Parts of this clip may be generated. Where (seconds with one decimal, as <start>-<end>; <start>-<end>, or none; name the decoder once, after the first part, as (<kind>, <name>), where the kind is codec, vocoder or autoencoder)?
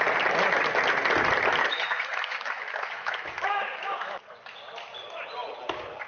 1.6-4.2 (autoencoder, DAC-VAE)